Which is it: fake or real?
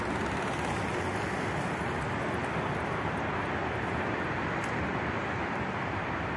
real